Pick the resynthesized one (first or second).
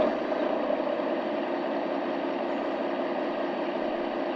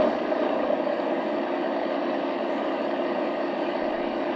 second